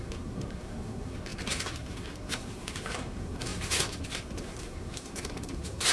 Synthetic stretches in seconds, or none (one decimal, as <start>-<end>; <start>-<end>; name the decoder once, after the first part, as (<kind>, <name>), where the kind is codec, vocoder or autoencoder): 0.0-5.9 (codec, SNAC)